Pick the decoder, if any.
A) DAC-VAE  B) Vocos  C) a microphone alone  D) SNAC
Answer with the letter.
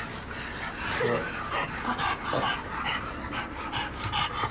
C